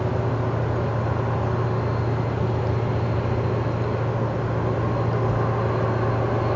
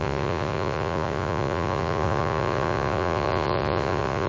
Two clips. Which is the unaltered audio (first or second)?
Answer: first